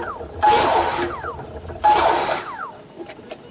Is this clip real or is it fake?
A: real